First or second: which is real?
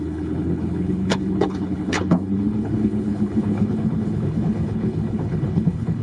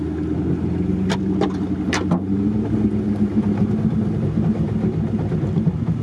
second